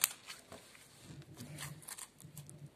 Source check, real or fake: real